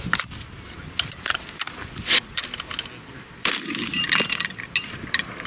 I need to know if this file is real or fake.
real